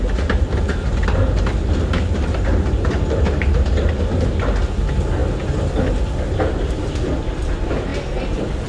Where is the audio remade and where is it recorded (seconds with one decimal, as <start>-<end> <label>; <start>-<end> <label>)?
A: 0.0-8.7 recorded